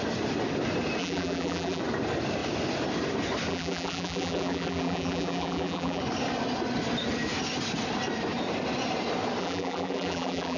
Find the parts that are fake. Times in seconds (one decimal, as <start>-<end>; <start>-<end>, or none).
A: 1.0-1.8; 3.5-6.0; 9.4-10.6